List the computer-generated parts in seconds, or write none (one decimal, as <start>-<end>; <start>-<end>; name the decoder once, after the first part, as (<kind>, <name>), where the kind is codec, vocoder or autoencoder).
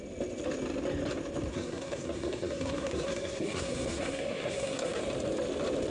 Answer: 1.5-5.0 (codec, SNAC)